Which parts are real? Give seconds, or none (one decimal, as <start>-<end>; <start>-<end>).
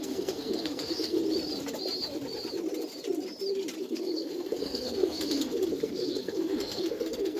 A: 1.2-3.8